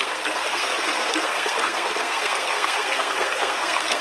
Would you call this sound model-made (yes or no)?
yes